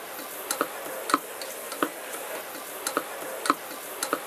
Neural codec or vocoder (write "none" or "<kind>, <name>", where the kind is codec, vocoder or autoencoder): none